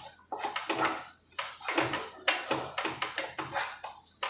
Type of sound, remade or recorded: recorded